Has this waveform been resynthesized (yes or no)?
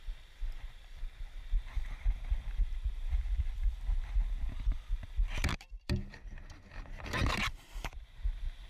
yes